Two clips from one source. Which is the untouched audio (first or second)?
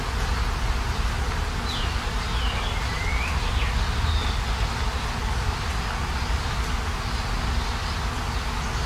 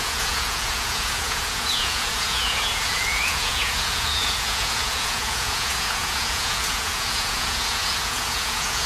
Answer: first